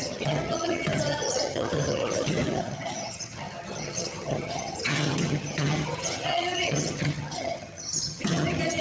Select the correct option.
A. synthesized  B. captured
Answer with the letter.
A